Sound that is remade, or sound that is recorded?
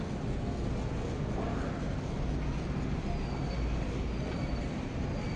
recorded